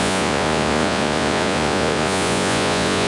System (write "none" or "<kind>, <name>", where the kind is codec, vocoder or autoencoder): vocoder, Vocos